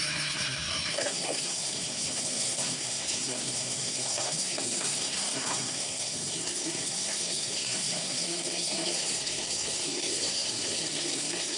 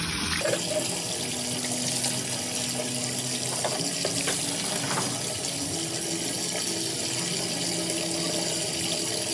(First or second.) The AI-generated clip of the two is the first